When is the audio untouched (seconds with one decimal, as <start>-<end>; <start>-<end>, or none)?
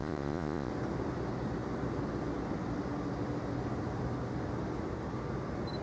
0.7-5.8